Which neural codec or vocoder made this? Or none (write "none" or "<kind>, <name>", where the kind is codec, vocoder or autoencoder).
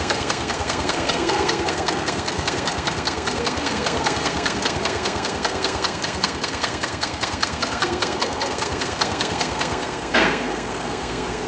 codec, SNAC